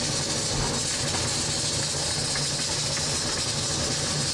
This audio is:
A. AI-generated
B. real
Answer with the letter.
B